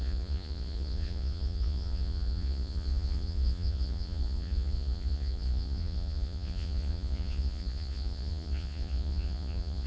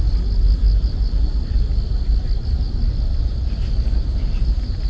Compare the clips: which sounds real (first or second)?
second